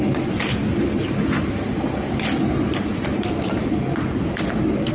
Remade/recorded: recorded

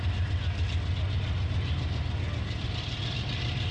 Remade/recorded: recorded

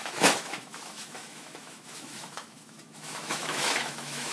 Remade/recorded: remade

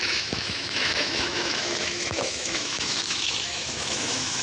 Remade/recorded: remade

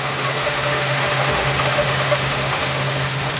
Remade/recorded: remade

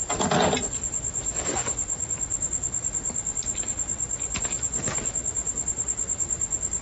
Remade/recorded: recorded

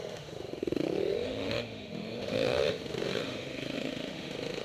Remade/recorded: remade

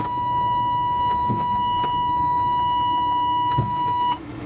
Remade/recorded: remade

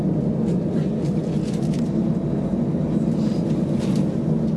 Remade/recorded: recorded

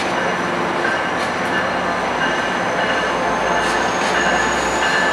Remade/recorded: recorded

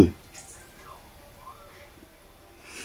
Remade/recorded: recorded